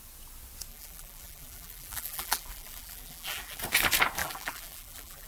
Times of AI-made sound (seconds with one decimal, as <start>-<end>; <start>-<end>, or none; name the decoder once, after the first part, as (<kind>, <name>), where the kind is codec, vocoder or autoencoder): 0.7-3.6 (vocoder, BigVGAN v2); 4.2-5.3